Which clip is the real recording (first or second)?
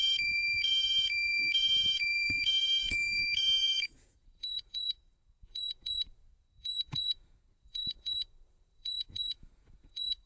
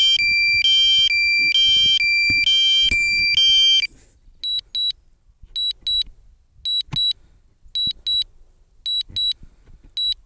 second